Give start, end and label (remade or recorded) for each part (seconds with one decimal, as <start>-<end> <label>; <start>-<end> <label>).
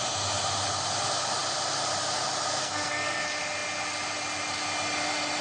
0.0-2.6 recorded; 2.6-3.2 remade; 3.2-5.4 recorded